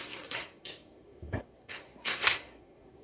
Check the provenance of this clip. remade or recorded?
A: remade